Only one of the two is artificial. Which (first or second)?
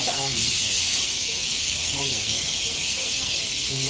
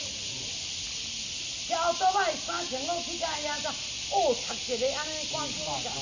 first